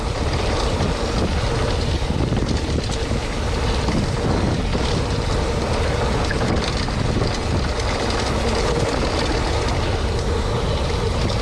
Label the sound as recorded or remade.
recorded